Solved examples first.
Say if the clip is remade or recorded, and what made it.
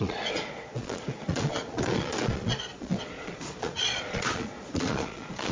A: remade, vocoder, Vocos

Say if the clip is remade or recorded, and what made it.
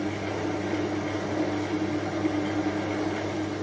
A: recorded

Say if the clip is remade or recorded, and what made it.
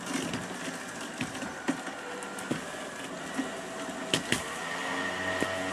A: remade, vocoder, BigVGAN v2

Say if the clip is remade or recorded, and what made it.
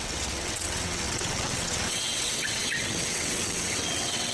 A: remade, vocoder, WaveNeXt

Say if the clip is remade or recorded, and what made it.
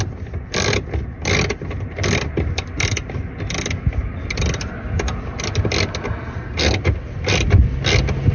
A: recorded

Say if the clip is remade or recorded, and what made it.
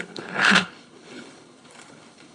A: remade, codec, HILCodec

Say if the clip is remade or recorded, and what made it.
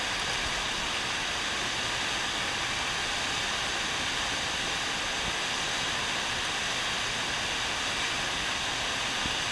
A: recorded